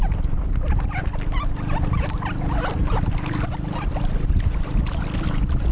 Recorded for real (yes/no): yes